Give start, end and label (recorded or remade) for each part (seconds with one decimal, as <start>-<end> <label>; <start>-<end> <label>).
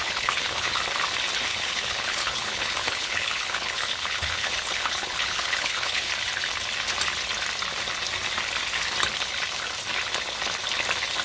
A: 0.0-0.8 remade; 0.8-1.5 recorded; 1.5-6.1 remade; 6.1-11.2 recorded